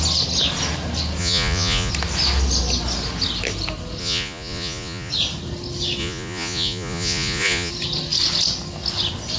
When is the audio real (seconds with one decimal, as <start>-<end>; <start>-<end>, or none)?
0.0-1.2; 1.9-4.0; 5.1-6.0; 7.7-9.4